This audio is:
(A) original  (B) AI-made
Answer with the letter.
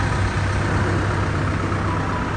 A